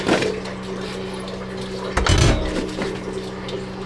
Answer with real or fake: real